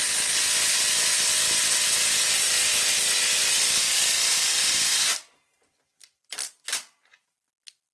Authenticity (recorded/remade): recorded